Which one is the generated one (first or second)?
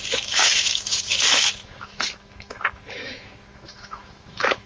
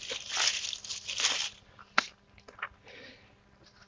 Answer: first